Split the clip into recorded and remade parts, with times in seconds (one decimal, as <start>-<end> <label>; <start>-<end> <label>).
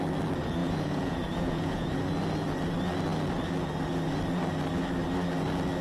0.0-0.6 recorded; 0.6-2.0 remade; 2.0-5.8 recorded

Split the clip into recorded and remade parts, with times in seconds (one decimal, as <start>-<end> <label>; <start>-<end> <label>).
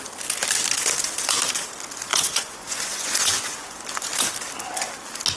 0.0-2.1 recorded; 2.1-3.8 remade; 3.8-5.4 recorded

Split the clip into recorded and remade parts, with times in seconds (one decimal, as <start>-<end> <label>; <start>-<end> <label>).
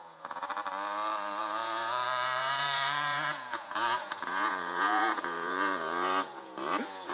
0.0-0.5 remade; 0.5-1.4 recorded; 1.4-7.1 remade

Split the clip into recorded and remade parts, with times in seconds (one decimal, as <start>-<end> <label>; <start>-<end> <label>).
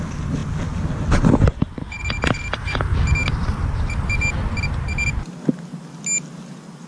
0.0-6.9 recorded